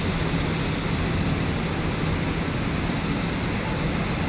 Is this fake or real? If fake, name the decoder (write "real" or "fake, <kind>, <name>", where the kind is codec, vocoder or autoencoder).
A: real